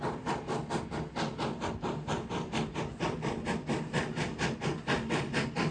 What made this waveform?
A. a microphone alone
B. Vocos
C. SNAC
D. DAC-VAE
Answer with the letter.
A